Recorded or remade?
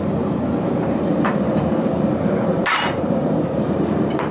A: remade